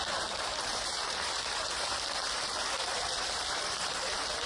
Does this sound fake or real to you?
fake